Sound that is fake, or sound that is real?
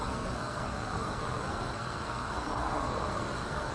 fake